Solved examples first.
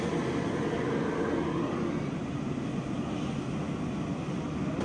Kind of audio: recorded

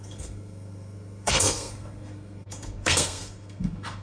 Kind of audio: remade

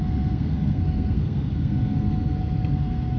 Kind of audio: remade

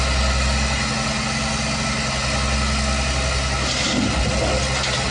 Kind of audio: recorded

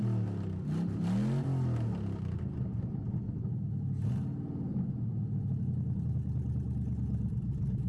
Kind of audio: recorded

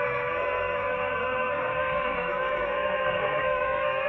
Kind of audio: remade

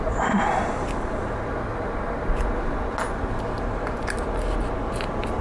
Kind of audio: recorded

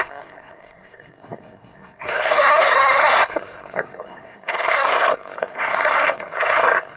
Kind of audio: remade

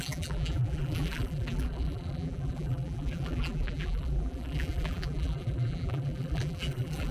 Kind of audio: remade